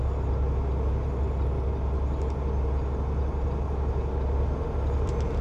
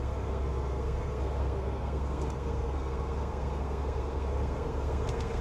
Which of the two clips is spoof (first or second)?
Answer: second